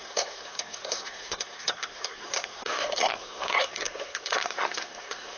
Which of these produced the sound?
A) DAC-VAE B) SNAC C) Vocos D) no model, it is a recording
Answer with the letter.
B